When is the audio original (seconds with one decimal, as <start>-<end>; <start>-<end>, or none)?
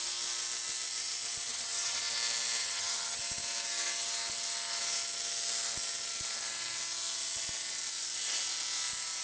0.0-1.5; 2.0-2.6; 3.2-9.2